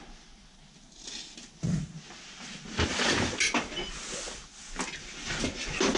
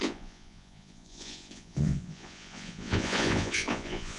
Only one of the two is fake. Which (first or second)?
second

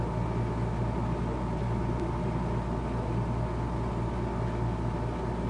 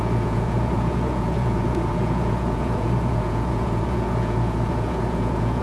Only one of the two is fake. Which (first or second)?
second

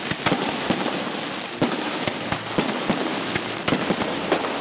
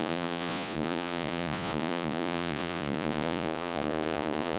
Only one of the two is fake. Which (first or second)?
second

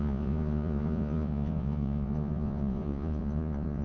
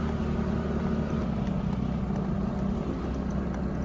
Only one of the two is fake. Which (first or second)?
first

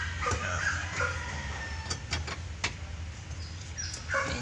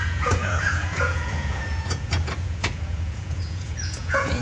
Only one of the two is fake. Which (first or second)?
second